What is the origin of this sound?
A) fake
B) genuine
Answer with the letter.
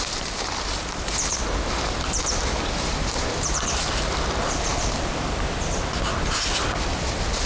B